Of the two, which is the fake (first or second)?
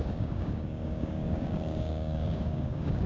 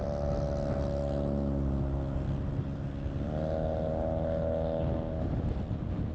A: first